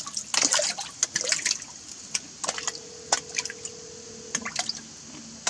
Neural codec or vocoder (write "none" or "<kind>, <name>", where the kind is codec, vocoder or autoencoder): none